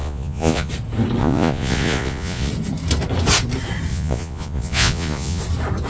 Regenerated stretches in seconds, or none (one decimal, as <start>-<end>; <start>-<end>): 0.0-0.7; 1.2-2.5; 3.9-5.4